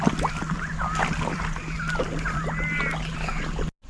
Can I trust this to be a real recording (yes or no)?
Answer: yes